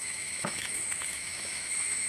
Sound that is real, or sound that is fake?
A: fake